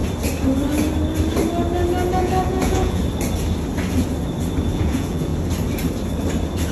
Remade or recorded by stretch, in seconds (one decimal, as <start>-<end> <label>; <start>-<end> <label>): 0.0-2.1 recorded; 2.1-3.0 remade; 3.0-4.7 recorded; 4.7-5.3 remade; 5.3-6.7 recorded